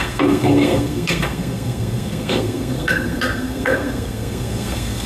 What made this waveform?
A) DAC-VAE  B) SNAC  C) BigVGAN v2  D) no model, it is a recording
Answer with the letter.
B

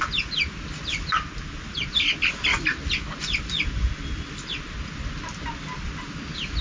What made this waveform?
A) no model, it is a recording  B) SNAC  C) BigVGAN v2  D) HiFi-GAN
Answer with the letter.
A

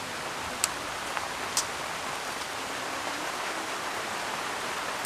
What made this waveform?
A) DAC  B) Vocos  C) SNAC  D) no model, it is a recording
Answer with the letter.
D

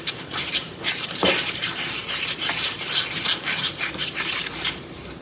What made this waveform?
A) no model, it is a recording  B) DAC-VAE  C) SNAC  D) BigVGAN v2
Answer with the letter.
D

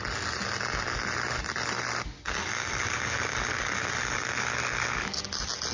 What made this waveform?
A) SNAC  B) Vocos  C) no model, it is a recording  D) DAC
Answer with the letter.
C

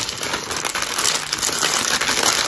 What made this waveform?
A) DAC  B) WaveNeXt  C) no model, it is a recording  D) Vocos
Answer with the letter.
C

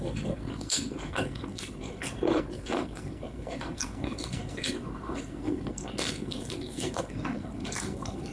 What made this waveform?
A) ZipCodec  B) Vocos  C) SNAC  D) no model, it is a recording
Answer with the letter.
C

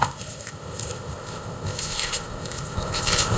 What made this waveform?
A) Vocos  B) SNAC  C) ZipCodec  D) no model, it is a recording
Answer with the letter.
C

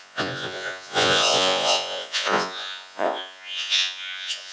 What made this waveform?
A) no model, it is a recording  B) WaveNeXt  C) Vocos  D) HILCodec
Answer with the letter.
C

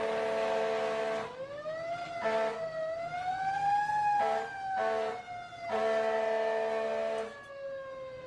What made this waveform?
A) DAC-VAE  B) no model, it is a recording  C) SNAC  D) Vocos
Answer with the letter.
B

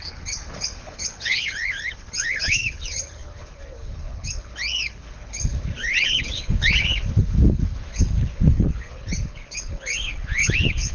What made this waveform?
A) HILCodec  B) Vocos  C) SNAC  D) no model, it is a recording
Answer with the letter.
A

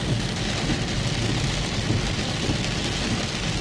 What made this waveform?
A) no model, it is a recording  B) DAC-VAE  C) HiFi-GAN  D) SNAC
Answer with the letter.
A